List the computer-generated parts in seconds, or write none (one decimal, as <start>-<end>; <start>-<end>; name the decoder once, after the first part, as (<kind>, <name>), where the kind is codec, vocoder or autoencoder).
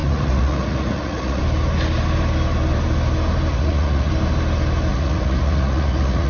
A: 0.0-1.4 (vocoder, Vocos); 3.5-4.1; 4.9-6.3